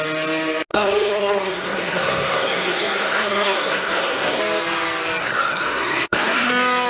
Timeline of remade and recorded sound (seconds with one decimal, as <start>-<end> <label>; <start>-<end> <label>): 0.0-0.7 recorded; 0.7-4.4 remade; 4.4-5.2 recorded; 5.2-6.5 remade; 6.5-6.9 recorded